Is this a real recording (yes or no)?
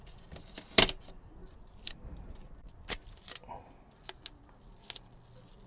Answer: yes